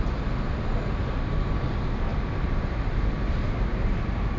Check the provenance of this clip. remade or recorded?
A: recorded